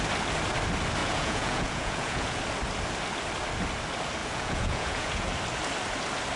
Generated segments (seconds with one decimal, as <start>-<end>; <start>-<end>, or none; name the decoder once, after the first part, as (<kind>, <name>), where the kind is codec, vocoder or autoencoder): 1.0-2.4 (vocoder, Vocos); 4.2-5.3